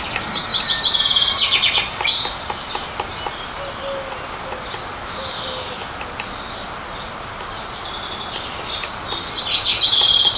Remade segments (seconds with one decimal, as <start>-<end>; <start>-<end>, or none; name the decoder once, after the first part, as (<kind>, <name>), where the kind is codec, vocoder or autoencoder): none